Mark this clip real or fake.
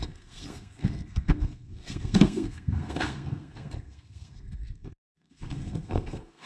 fake